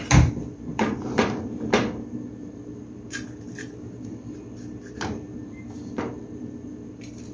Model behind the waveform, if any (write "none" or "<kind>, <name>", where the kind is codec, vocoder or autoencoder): vocoder, BigVGAN v2